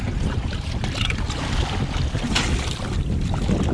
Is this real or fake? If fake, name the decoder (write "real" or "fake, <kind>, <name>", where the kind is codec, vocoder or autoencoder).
real